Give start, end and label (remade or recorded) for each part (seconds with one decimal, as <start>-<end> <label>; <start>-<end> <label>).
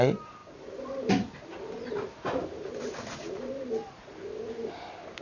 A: 0.0-5.2 recorded